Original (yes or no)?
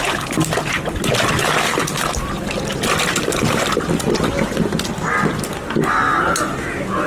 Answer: yes